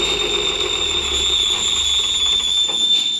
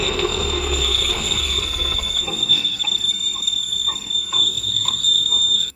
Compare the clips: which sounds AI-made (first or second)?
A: second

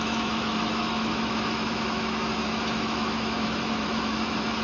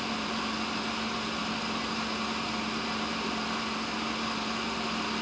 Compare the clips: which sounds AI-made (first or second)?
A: first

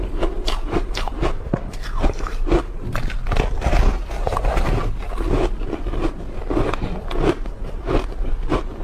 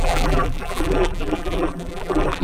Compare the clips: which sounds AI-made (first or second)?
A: second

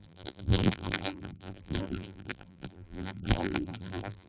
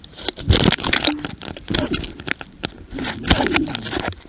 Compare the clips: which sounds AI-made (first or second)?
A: first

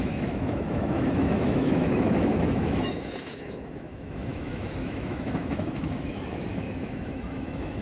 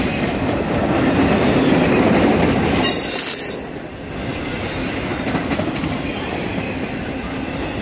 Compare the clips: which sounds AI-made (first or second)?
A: first